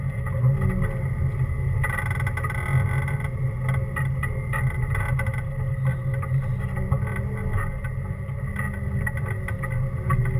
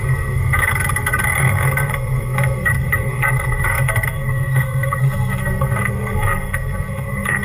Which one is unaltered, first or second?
first